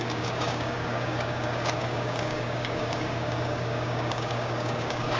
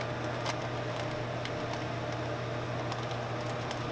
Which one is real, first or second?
second